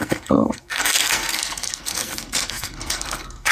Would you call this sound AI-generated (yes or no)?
yes